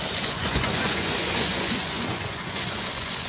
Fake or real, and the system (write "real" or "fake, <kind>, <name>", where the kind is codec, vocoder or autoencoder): fake, vocoder, Vocos